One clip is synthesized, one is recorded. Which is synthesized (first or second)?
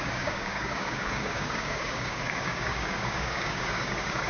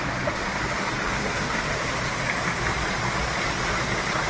first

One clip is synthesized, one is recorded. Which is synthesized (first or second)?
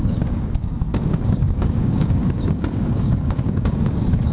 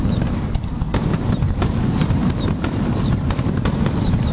first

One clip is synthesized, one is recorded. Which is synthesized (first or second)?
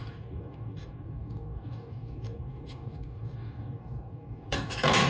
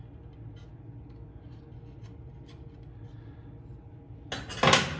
first